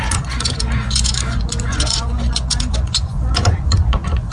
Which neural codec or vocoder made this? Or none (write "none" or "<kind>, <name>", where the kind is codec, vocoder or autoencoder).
vocoder, Vocos